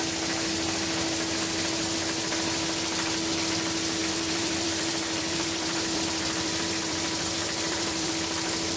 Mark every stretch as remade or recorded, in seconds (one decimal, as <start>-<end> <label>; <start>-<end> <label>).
0.0-4.0 recorded; 4.0-8.1 remade; 8.1-8.8 recorded